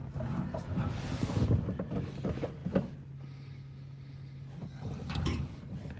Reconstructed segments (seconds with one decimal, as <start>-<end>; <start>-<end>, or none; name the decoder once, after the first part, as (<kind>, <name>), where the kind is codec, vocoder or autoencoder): none